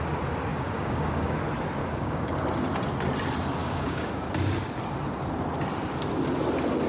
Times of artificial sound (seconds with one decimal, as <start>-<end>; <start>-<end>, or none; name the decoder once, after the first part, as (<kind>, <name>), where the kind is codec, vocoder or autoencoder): 0.5-1.4 (codec, DAC); 1.8-2.4; 3.6-4.3